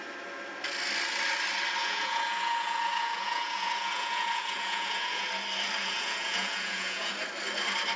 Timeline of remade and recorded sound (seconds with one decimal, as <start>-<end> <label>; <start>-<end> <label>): 0.0-1.8 recorded; 1.8-5.3 remade; 5.3-5.8 recorded; 5.8-7.1 remade; 7.1-8.0 recorded